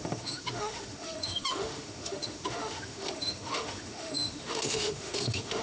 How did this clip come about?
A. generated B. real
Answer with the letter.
A